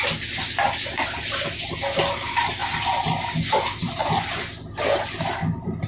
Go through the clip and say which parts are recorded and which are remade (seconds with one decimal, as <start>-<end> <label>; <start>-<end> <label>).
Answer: 0.0-5.9 recorded